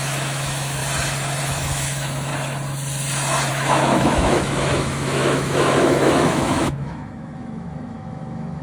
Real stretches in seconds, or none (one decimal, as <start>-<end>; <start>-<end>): 0.8-1.4; 2.3-3.5